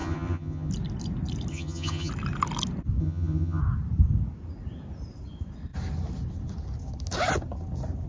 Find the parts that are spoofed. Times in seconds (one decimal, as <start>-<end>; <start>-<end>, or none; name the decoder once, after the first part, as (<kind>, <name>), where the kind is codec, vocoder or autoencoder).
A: 0.0-0.7 (vocoder, HiFi-GAN); 1.5-2.1; 3.0-3.6